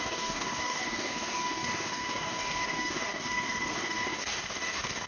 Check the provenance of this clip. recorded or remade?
remade